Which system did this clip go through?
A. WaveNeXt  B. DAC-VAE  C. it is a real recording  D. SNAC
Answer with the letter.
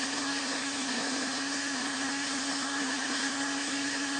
D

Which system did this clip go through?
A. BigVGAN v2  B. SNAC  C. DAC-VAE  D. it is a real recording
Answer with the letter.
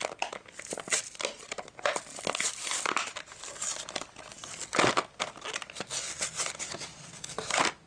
D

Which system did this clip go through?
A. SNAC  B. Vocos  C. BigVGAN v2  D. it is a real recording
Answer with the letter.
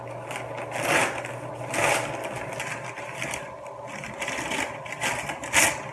D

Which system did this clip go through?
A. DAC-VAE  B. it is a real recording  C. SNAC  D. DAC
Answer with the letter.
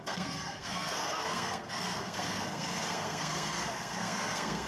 C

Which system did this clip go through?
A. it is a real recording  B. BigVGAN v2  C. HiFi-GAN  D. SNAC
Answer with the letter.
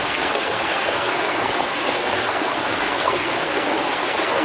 D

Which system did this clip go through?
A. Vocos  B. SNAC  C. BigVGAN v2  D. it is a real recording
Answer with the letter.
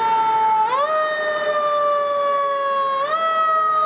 D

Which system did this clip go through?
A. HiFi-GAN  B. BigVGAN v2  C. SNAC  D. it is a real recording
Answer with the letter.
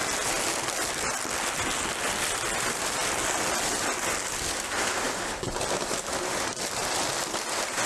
D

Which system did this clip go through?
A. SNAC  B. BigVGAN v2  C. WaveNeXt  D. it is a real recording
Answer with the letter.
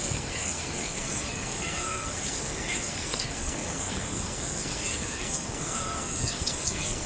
A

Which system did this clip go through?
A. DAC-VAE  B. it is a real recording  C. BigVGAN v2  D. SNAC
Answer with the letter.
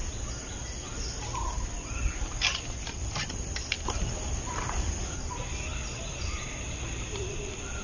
B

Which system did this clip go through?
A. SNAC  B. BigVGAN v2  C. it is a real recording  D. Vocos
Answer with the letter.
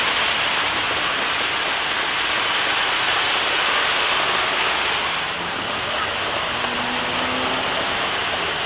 C